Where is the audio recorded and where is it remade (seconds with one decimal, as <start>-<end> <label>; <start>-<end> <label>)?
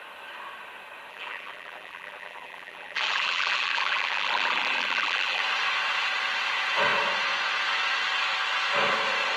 0.0-1.1 recorded; 1.1-5.4 remade; 5.4-9.4 recorded